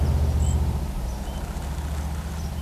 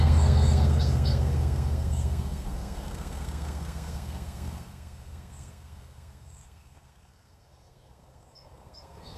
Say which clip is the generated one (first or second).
second